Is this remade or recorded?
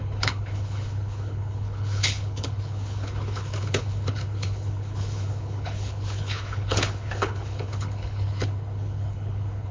remade